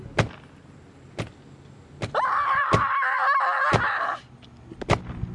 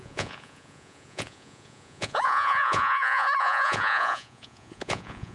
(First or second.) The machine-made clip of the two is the second